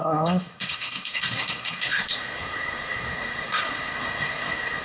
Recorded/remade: remade